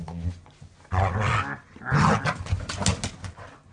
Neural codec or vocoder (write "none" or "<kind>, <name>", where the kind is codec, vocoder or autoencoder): none